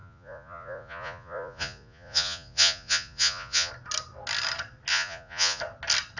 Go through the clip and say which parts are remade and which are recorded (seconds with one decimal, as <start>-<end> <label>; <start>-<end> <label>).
0.0-3.7 remade; 3.7-4.9 recorded; 4.9-5.6 remade; 5.6-6.2 recorded

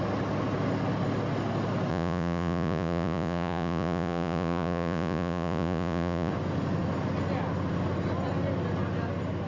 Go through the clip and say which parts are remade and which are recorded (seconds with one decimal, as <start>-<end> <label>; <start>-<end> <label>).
0.0-1.9 recorded; 1.9-6.3 remade; 6.3-9.5 recorded

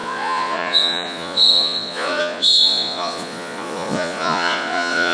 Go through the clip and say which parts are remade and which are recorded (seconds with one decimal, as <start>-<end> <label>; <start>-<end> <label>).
0.0-5.1 remade

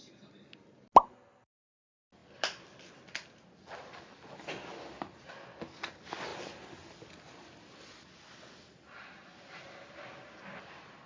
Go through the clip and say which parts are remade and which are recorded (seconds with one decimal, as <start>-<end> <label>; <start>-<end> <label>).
0.0-11.1 recorded

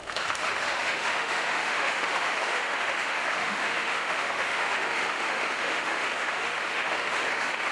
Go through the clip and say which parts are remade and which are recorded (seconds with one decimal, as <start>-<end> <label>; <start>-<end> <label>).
0.0-7.7 remade